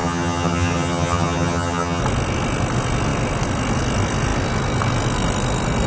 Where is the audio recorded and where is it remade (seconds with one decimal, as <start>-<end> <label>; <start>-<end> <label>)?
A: 0.0-2.0 remade; 2.0-5.9 recorded